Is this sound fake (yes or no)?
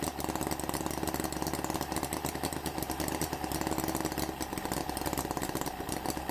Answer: no